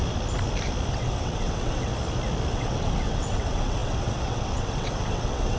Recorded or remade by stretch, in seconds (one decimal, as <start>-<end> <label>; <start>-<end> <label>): 0.0-0.9 recorded; 0.9-1.9 remade; 1.9-2.5 recorded; 2.5-5.6 remade